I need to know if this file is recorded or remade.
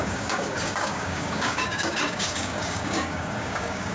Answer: remade